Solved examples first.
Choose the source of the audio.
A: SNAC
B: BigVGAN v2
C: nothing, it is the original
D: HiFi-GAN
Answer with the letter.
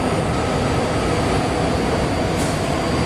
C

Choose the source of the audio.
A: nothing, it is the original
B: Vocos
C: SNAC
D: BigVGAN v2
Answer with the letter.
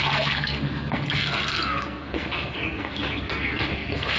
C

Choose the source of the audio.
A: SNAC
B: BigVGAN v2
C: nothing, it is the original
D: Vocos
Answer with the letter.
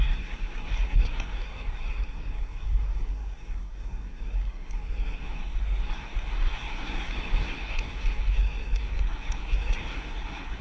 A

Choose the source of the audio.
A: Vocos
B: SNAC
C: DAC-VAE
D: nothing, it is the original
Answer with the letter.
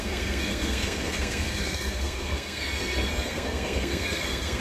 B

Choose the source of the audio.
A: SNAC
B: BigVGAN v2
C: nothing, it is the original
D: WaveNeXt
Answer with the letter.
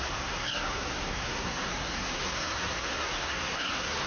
A